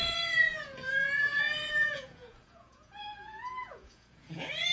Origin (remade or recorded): remade